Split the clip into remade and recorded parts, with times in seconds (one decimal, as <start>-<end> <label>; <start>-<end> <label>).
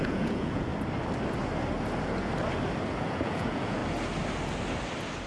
0.0-0.7 remade; 0.7-2.9 recorded; 2.9-3.8 remade; 3.8-5.3 recorded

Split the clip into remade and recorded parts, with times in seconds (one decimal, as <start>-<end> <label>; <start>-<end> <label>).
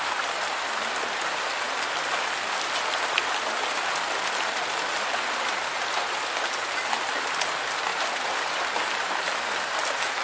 0.0-10.2 recorded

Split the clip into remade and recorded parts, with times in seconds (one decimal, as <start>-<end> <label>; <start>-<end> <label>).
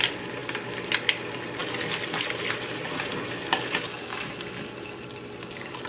0.0-5.9 recorded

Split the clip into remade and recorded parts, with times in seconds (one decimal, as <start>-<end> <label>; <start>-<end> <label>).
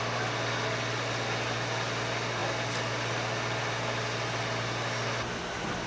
0.0-5.9 recorded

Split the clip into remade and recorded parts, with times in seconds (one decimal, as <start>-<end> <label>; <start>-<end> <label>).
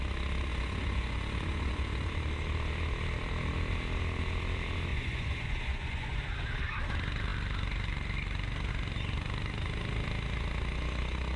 0.0-0.5 recorded; 0.5-2.1 remade; 2.1-4.9 recorded; 4.9-6.2 remade; 6.2-11.4 recorded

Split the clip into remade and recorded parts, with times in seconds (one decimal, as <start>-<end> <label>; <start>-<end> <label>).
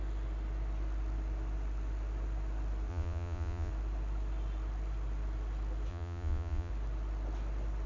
0.0-2.9 recorded; 2.9-3.7 remade; 3.7-5.9 recorded; 5.9-6.7 remade; 6.7-7.9 recorded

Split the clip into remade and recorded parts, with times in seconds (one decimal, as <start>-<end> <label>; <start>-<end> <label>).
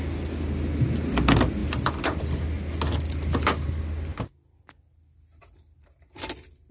0.0-6.7 recorded